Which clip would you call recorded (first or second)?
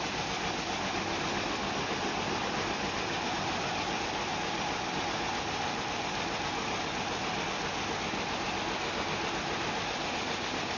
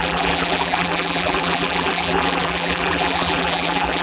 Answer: first